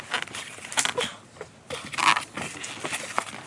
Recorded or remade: recorded